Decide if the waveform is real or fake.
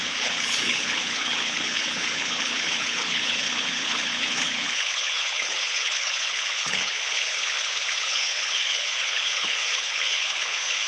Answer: fake